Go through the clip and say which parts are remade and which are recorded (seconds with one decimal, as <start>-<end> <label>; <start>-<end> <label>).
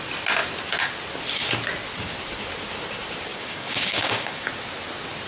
0.0-3.3 recorded; 3.3-4.5 remade; 4.5-5.3 recorded